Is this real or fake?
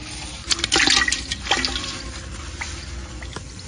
real